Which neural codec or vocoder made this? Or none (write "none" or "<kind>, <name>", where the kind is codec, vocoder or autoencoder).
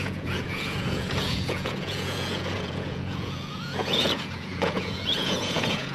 vocoder, Vocos